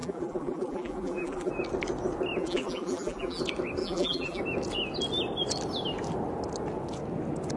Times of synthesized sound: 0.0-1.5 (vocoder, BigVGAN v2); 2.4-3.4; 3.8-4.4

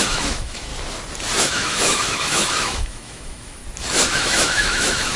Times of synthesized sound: 0.0-0.7 (autoencoder, DAC-VAE); 1.4-3.6; 4.1-5.2

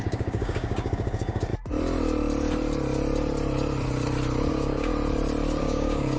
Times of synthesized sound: 0.0-1.5 (codec, DAC); 4.5-4.9; 5.6-6.2

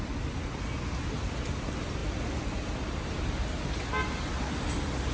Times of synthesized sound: none

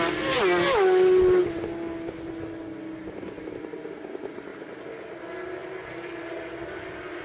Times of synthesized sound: 5.6-6.2 (vocoder, BigVGAN v2)

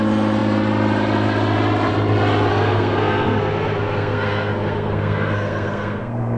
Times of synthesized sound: 2.5-6.4 (codec, SNAC)

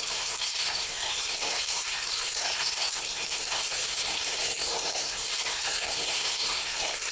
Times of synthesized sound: 0.0-7.1 (codec, SNAC)